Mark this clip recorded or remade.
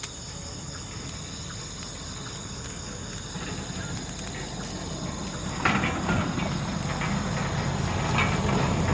recorded